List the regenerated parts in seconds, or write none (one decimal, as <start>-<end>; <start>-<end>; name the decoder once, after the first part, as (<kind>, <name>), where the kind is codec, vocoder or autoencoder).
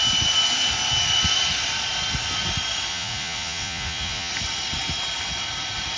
2.9-4.3 (vocoder, Vocos)